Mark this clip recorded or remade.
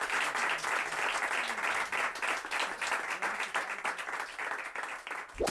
recorded